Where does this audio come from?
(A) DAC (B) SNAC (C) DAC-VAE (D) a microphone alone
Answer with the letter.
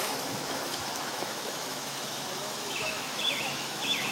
C